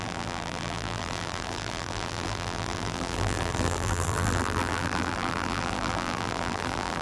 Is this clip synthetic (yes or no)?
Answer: yes